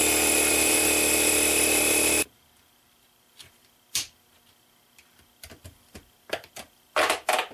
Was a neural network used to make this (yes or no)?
yes